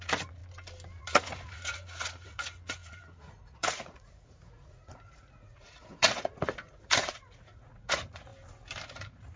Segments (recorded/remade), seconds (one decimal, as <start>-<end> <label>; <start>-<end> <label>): 0.0-0.4 remade; 0.4-1.0 recorded; 1.0-8.3 remade; 8.3-8.9 recorded; 8.9-9.4 remade